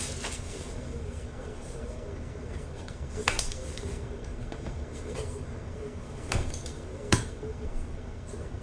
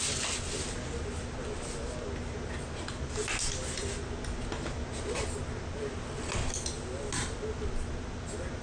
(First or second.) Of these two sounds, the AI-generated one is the first